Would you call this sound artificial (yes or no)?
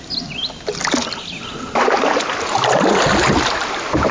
no